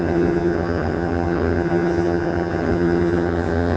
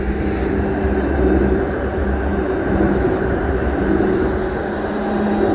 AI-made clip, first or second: first